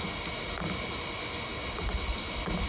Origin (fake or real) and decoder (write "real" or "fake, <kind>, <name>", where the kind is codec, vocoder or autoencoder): real